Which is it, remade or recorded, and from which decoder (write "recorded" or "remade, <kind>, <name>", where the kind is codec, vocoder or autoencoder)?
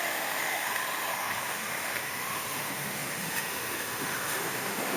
remade, autoencoder, DAC-VAE